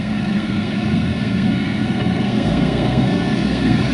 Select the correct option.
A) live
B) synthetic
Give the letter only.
B